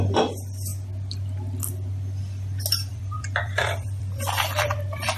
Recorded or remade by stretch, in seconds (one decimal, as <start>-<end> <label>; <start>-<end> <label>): 0.0-2.9 recorded; 2.9-5.2 remade